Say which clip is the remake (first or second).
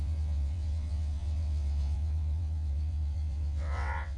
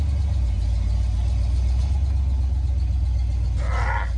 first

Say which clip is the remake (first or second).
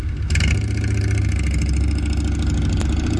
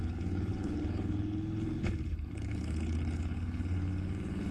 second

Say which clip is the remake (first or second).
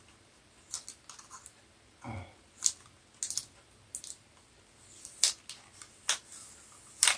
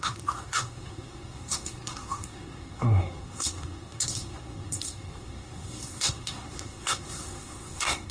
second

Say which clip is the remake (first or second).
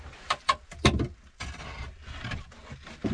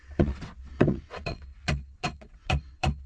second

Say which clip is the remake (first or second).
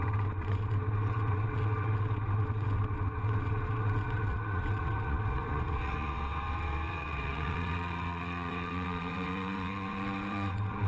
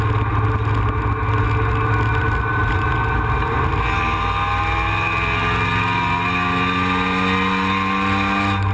first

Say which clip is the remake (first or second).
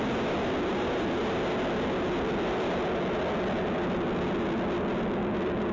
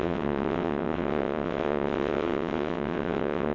second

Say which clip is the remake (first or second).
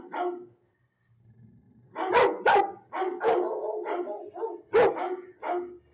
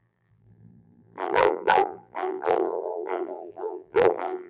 second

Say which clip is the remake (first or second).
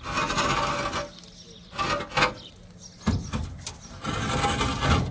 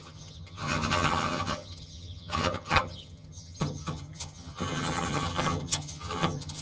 second